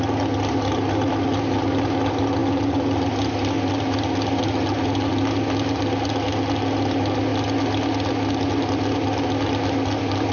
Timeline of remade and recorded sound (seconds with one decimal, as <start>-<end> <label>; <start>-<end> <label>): 0.0-10.3 recorded